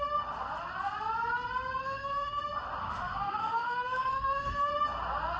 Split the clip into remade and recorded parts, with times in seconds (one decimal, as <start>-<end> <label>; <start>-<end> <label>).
0.0-1.8 recorded; 1.8-2.4 remade; 2.4-2.8 recorded; 2.8-4.7 remade; 4.7-5.4 recorded